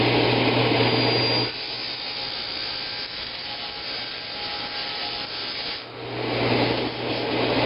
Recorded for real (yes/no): yes